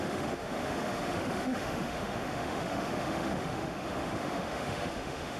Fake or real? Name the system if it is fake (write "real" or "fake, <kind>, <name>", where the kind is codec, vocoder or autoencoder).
fake, autoencoder, DAC-VAE